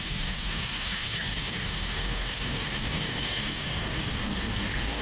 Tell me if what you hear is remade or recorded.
remade